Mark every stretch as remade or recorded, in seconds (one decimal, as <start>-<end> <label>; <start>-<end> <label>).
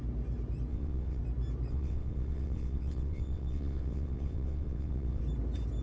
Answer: 0.0-0.7 recorded; 0.7-1.2 remade; 1.2-1.7 recorded; 1.7-5.2 remade; 5.2-5.8 recorded